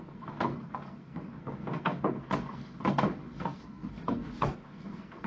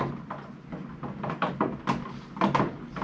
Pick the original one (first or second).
second